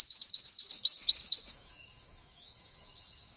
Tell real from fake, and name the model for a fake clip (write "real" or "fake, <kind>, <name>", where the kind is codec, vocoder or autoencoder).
fake, autoencoder, DAC-VAE